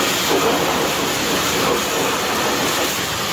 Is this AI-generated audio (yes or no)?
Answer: no